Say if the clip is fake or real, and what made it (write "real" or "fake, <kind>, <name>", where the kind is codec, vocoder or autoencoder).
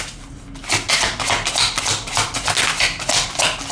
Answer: real